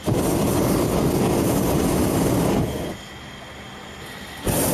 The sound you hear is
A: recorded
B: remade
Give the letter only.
A